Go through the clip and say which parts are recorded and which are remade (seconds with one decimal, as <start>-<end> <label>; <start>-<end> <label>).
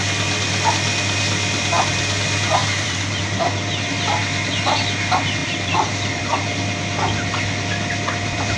0.0-2.6 recorded; 2.6-3.2 remade; 3.2-5.4 recorded; 5.4-6.2 remade; 6.2-8.6 recorded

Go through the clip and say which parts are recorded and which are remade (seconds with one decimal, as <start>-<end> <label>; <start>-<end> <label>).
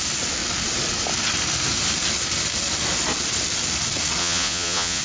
0.0-4.2 recorded; 4.2-5.0 remade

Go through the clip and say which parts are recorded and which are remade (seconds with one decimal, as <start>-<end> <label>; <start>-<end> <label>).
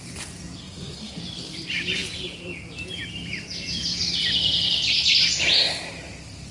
0.0-0.6 recorded; 0.6-1.2 remade; 1.2-6.5 recorded